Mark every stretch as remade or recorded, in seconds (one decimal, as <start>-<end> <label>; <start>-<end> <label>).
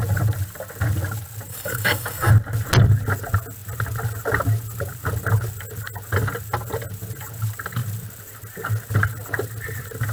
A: 0.0-1.5 recorded; 1.5-2.3 remade; 2.3-10.1 recorded